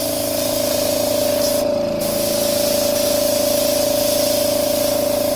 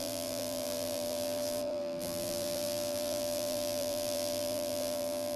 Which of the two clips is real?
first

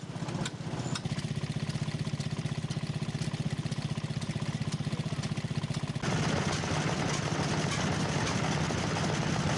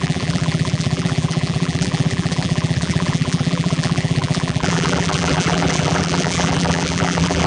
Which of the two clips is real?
first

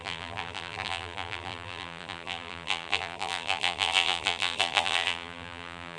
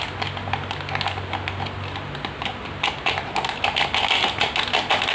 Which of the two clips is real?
second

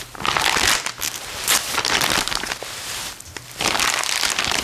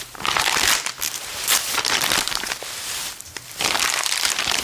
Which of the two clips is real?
first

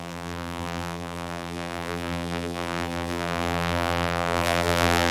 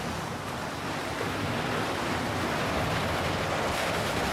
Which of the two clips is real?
second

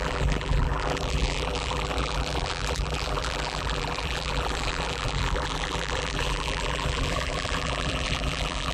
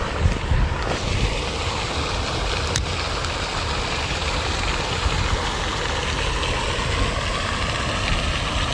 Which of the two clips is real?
second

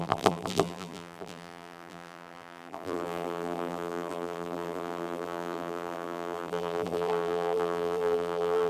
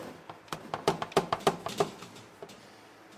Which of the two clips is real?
second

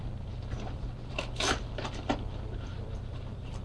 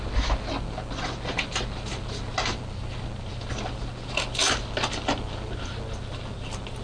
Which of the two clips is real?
second